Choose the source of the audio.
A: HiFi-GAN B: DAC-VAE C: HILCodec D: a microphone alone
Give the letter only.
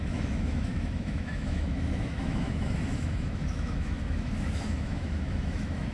B